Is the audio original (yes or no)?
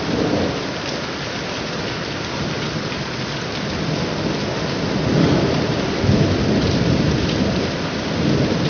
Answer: yes